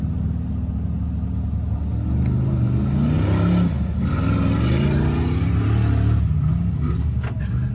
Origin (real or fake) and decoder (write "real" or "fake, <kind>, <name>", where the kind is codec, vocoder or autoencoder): real